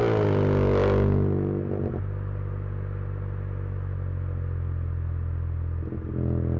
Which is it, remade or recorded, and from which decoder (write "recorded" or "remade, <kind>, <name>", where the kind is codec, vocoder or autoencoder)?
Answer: recorded